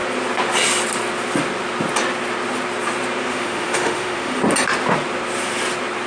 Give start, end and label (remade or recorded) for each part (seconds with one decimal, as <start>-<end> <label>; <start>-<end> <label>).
0.0-3.3 recorded; 3.3-4.4 remade; 4.4-6.1 recorded